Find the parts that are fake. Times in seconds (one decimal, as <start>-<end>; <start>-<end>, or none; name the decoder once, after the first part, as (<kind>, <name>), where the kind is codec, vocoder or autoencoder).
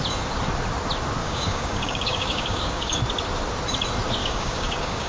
1.2-3.0 (codec, DAC); 4.2-5.1